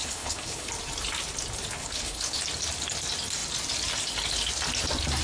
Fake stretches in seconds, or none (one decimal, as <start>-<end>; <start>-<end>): 0.0-0.7; 1.8-2.4